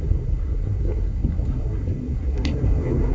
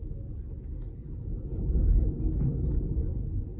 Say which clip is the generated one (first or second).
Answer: first